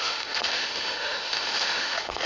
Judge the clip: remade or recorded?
remade